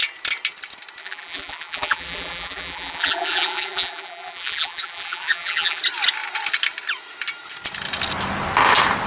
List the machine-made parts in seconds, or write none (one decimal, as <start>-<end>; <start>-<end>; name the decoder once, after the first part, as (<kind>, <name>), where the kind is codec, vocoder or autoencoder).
1.0-5.8 (vocoder, BigVGAN v2)